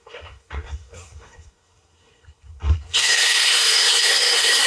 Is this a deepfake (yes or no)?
yes